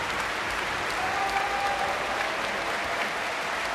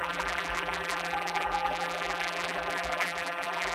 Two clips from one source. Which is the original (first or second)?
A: first